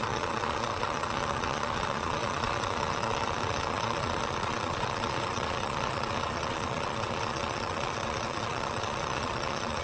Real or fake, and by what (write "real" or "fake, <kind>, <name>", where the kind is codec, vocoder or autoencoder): fake, vocoder, Vocos